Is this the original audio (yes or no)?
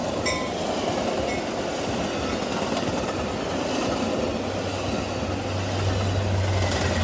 yes